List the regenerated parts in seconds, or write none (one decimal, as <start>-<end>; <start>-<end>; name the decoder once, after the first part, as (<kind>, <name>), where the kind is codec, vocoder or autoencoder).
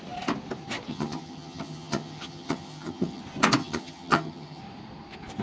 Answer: 0.9-3.2 (vocoder, HiFi-GAN); 3.6-4.6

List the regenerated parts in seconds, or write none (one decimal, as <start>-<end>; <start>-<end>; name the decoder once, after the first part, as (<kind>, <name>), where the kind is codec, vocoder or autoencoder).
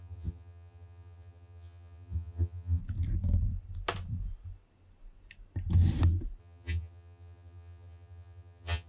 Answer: 0.0-2.8 (vocoder, HiFi-GAN); 6.4-8.9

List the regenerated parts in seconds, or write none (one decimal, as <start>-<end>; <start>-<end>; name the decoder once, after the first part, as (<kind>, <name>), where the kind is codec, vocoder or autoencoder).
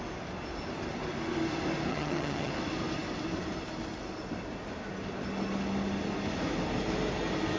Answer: 1.9-2.5 (vocoder, HiFi-GAN)